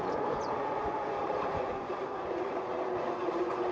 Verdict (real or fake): fake